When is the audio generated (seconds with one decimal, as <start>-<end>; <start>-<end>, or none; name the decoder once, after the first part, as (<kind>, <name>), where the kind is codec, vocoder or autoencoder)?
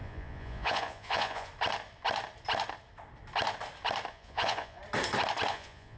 0.0-1.5 (vocoder, Vocos); 4.1-4.8; 5.5-6.0